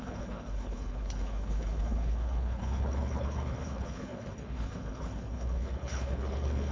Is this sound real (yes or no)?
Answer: no